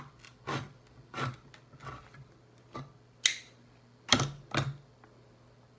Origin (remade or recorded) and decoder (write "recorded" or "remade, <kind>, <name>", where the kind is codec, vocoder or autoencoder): recorded